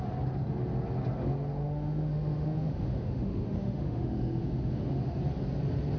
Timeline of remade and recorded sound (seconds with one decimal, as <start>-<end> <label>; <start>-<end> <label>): 0.0-1.6 recorded; 1.6-5.2 remade; 5.2-6.0 recorded